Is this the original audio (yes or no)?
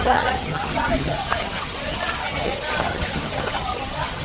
no